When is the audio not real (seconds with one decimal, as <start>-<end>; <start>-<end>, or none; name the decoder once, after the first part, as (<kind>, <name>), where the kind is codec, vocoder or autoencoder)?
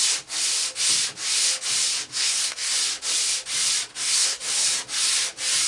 2.1-2.7 (codec, SNAC); 3.9-4.5